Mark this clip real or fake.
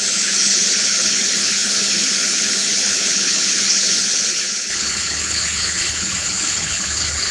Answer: fake